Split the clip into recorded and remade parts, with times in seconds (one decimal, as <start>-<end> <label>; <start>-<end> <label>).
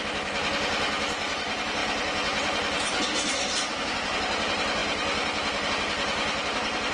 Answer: 0.0-6.9 recorded